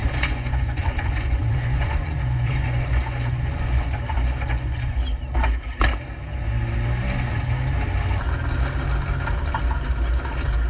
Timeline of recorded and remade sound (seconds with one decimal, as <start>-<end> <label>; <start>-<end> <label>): 0.0-5.0 remade; 5.0-10.7 recorded

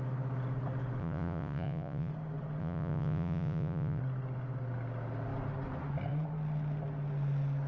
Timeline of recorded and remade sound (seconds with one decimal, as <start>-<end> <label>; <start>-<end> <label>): 0.0-1.0 recorded; 1.0-2.1 remade; 2.1-2.6 recorded; 2.6-4.0 remade; 4.0-7.7 recorded

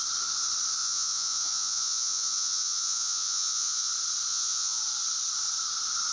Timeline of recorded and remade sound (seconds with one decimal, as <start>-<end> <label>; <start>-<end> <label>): 0.0-0.8 recorded; 0.8-3.9 remade; 3.9-4.3 recorded; 4.3-4.8 remade; 4.8-6.1 recorded